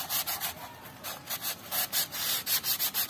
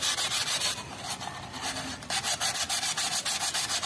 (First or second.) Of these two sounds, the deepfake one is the second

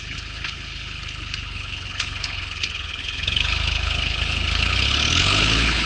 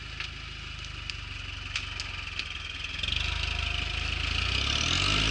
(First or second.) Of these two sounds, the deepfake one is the first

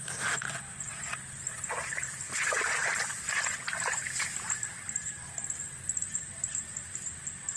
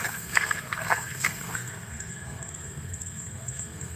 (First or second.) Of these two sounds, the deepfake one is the second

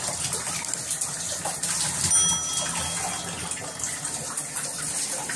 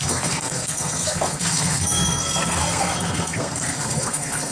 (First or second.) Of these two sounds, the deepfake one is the second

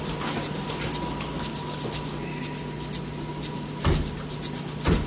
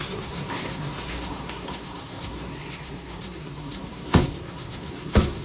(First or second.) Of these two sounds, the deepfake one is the second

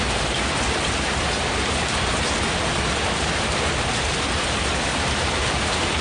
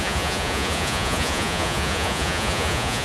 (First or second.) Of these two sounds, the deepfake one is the second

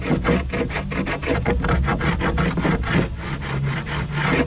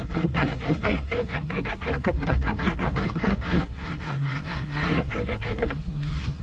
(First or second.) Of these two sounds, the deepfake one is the second